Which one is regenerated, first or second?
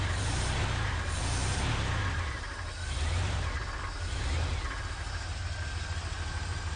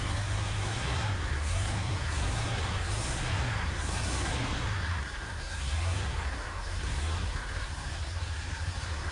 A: second